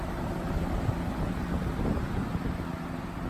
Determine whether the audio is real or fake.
real